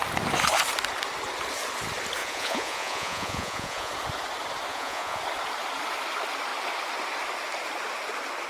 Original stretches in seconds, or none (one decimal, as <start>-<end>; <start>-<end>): 0.0-2.2; 3.9-4.7; 5.2-8.5